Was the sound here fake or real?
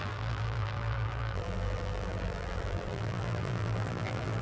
fake